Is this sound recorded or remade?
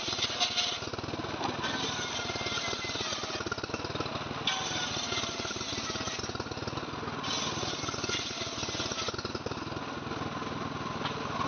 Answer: recorded